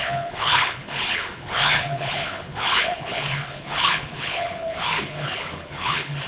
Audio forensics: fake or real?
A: fake